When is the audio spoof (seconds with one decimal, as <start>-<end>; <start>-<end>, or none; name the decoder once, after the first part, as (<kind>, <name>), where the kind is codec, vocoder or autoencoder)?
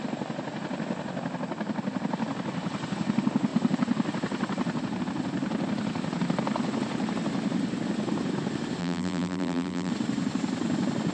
8.8-9.9 (vocoder, BigVGAN v2)